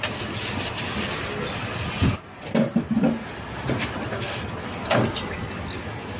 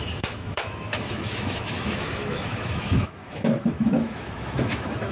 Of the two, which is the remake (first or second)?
second